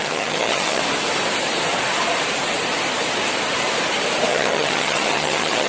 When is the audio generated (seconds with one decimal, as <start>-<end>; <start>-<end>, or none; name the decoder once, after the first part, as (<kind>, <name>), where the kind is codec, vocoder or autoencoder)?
0.0-0.8 (vocoder, HiFi-GAN); 4.3-5.7